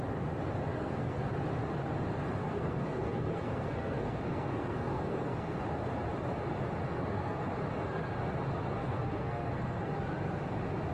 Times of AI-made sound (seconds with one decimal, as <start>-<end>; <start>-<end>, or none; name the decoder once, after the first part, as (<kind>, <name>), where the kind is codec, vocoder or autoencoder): 0.7-1.3 (codec, SNAC); 2.4-5.6; 6.9-7.5; 8.8-9.9